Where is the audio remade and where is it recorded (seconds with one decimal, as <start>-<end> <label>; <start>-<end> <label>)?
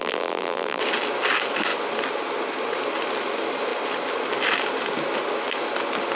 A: 0.0-0.8 remade; 0.8-6.2 recorded